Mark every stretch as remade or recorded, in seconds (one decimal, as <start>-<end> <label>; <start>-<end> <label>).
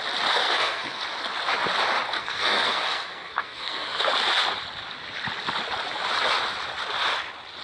0.0-0.4 recorded; 0.4-1.0 remade; 1.0-2.2 recorded; 2.2-4.0 remade; 4.0-7.6 recorded